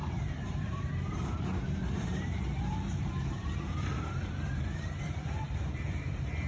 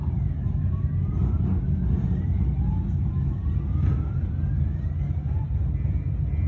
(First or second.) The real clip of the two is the second